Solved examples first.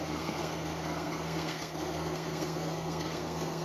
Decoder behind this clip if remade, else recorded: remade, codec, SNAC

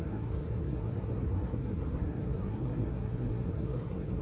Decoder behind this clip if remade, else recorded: remade, codec, SNAC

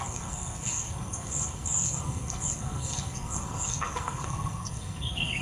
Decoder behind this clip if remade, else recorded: remade, codec, SNAC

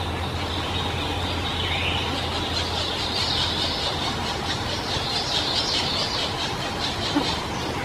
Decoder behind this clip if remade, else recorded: recorded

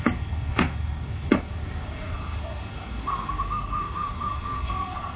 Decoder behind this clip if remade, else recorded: remade, codec, SNAC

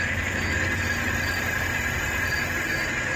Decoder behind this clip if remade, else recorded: recorded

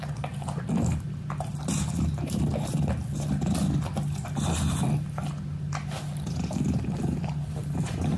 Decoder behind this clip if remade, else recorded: recorded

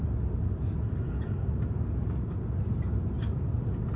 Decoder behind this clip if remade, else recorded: recorded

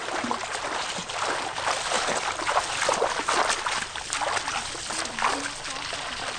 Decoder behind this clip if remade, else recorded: recorded